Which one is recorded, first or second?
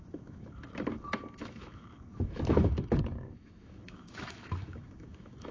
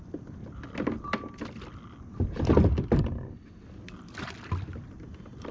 second